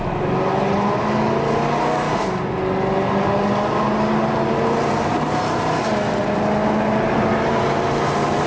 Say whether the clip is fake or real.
real